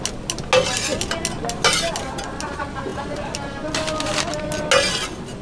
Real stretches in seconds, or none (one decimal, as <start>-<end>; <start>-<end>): 0.0-5.4